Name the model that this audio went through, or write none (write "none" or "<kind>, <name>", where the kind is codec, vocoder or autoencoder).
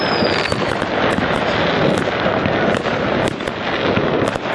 none